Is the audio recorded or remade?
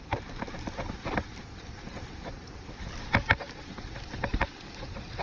recorded